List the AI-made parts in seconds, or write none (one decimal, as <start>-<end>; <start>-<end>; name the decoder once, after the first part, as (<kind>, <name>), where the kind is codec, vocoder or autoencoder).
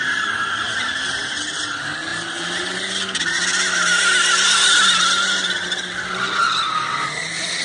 none